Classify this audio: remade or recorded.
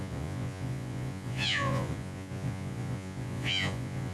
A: remade